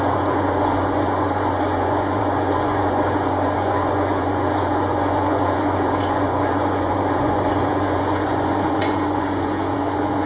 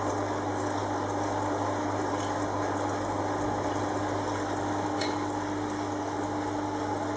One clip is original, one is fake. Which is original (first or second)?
second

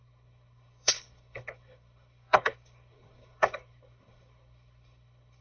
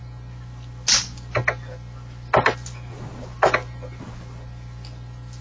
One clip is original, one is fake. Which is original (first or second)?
second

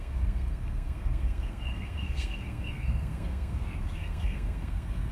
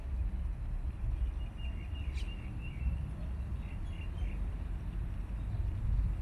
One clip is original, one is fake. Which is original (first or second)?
second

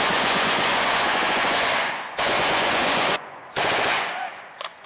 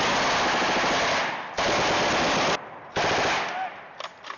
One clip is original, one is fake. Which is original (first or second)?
second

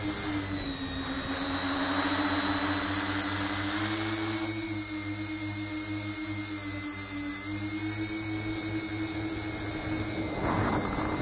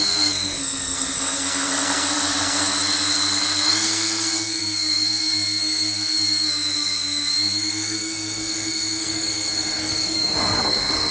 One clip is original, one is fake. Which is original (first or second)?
first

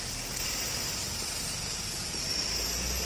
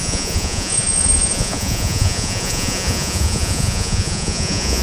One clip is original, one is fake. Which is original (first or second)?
first